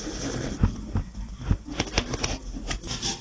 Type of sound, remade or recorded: recorded